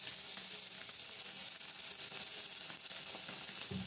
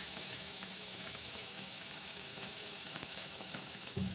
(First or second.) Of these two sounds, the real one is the first